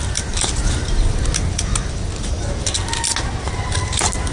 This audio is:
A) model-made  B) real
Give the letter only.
B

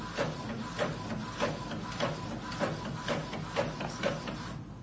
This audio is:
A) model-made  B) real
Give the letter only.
B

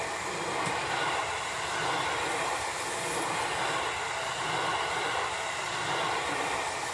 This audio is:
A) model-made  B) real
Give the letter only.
B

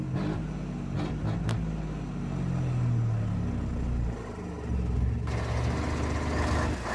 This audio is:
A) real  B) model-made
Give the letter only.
A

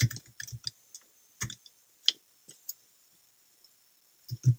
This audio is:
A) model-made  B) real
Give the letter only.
B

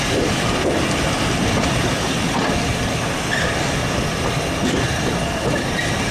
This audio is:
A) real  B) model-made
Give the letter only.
A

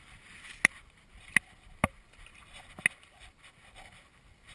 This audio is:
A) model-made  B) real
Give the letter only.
B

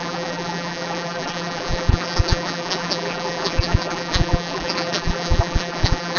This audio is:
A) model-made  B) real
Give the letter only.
A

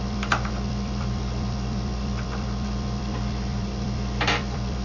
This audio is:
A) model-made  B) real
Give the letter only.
A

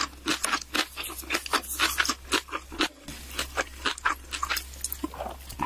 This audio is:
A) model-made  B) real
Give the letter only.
B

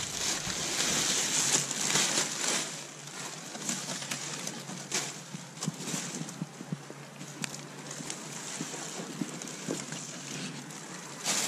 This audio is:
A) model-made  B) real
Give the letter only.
B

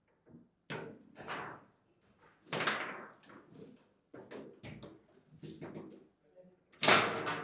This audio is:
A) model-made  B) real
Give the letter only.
B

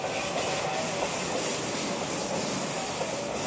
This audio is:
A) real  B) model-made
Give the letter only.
A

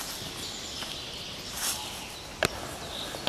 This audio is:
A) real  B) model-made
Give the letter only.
A